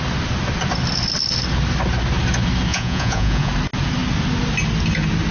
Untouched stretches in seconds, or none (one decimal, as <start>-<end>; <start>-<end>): 0.0-2.7; 3.5-5.3

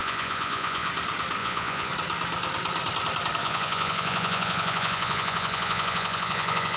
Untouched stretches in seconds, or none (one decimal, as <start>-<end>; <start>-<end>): 0.9-1.4; 1.9-3.4

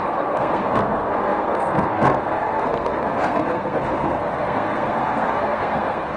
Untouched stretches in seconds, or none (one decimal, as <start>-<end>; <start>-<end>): none